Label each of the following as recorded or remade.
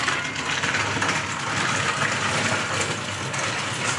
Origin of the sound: recorded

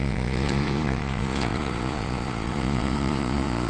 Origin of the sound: remade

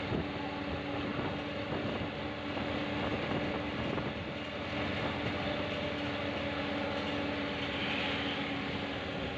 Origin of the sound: recorded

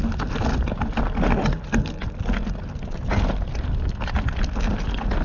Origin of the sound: recorded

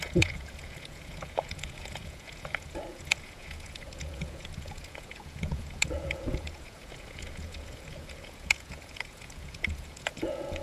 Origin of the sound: remade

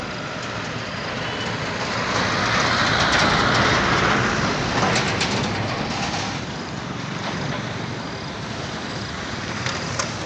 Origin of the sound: recorded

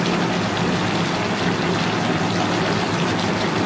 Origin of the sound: recorded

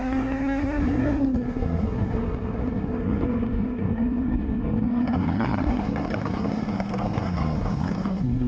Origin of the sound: remade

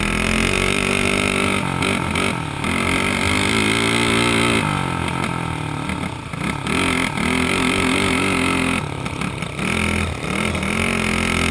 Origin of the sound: recorded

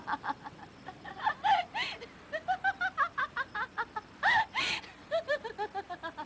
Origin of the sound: recorded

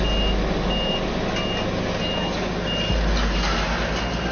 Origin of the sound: recorded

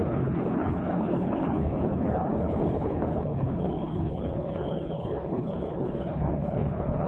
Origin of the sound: remade